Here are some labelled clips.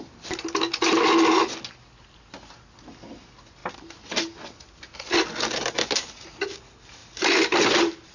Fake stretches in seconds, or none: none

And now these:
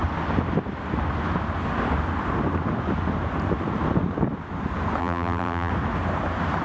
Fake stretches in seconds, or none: 5.0-5.7 (vocoder, BigVGAN v2)

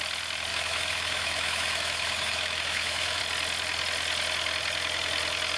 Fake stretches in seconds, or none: 0.5-3.2 (autoencoder, DAC-VAE)

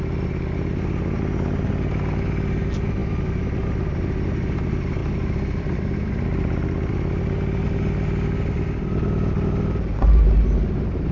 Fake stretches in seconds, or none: 3.0-4.3 (vocoder, BigVGAN v2); 5.0-7.2

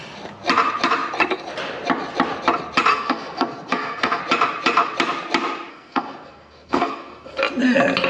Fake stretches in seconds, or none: 2.9-4.2 (codec, SNAC); 5.7-7.4

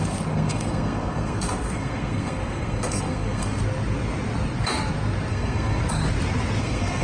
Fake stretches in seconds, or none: 0.0-3.6 (codec, SNAC); 5.3-5.8; 6.6-7.0

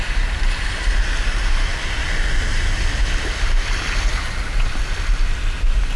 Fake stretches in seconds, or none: none